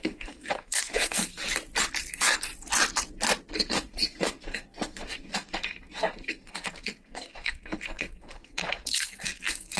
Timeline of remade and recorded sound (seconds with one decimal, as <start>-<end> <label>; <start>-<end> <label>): 0.0-1.4 remade; 1.4-2.1 recorded; 2.1-2.5 remade; 2.5-3.7 recorded; 3.7-9.8 remade

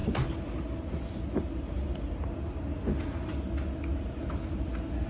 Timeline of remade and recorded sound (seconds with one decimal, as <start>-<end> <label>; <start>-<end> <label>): 0.0-5.1 recorded